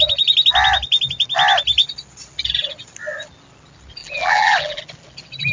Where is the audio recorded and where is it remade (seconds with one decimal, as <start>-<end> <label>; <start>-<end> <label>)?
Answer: 0.0-4.0 recorded; 4.0-4.8 remade; 4.8-5.5 recorded